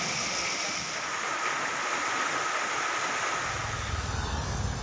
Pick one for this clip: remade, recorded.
recorded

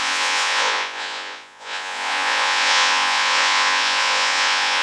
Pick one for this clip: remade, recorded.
remade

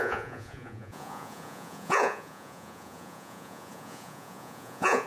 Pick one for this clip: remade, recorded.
remade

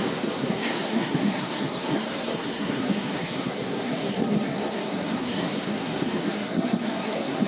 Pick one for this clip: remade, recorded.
remade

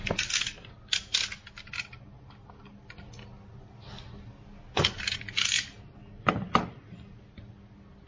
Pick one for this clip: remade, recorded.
recorded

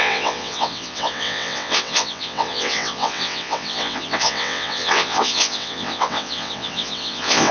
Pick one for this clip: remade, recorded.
remade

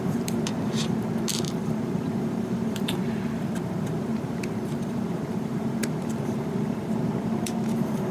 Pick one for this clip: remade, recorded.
remade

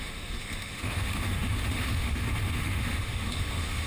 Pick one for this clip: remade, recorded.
remade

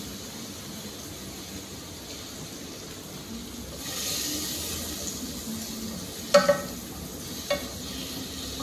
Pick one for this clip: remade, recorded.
recorded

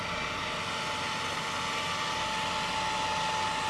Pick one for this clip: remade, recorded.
recorded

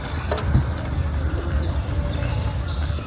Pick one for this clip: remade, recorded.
recorded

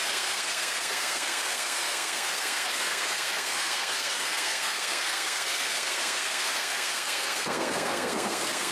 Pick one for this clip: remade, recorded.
remade